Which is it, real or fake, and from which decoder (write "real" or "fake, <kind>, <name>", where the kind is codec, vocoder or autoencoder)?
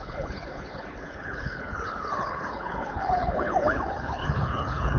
fake, codec, HILCodec